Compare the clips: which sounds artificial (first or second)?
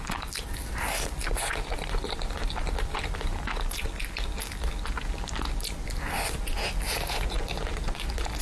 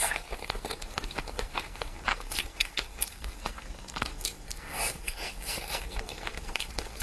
second